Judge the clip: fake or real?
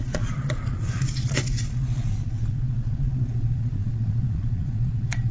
fake